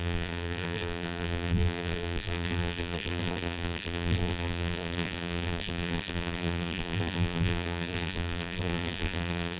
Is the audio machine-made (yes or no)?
yes